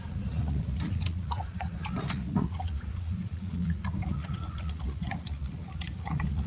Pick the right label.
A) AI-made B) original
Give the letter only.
A